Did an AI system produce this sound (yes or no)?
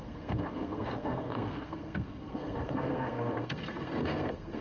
yes